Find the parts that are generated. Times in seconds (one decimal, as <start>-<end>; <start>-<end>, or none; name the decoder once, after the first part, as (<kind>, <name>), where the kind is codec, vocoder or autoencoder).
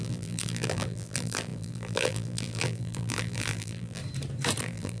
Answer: 0.0-4.0 (vocoder, BigVGAN v2); 4.6-5.0